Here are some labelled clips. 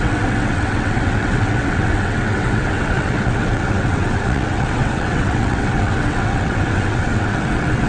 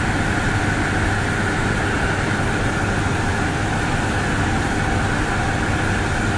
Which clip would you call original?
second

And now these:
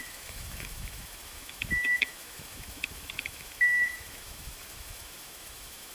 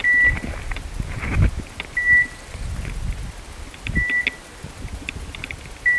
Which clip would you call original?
second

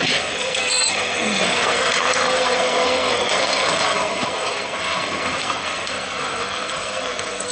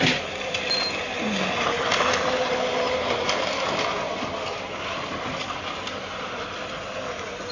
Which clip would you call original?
second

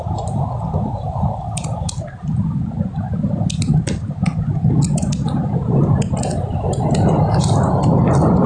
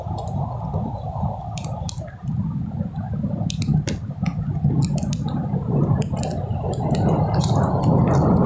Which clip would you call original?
second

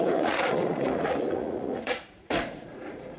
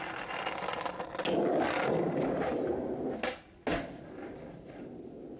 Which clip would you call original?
second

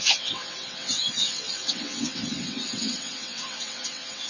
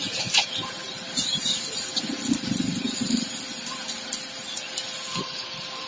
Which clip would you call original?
second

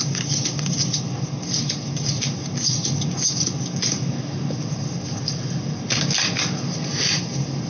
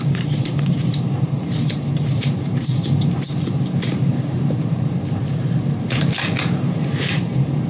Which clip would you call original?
first